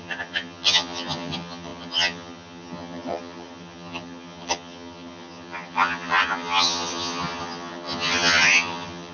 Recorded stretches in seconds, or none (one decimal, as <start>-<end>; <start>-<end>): none